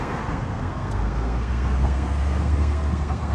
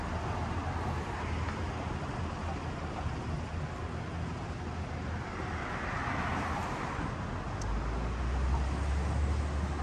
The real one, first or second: second